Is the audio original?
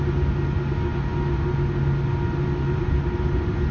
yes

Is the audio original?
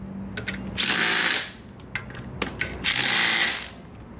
yes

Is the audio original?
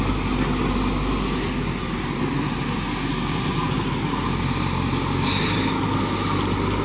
yes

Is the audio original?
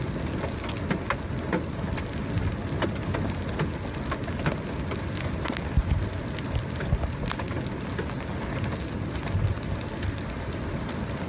yes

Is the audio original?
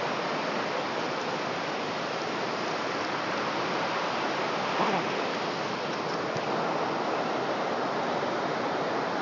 yes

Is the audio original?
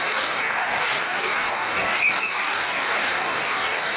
no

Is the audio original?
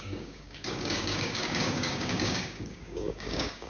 no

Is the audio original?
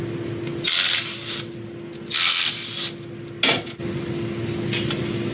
yes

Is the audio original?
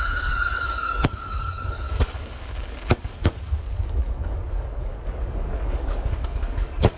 no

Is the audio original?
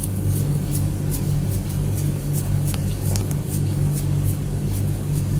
no